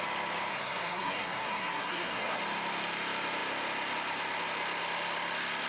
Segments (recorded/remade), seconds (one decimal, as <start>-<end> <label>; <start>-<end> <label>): 0.0-0.5 recorded; 0.5-2.4 remade; 2.4-5.7 recorded